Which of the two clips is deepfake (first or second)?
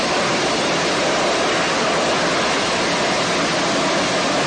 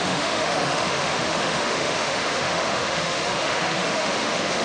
second